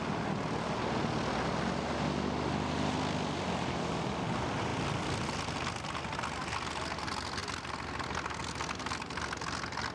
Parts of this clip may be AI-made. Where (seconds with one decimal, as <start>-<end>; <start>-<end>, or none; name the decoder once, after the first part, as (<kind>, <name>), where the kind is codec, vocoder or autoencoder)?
none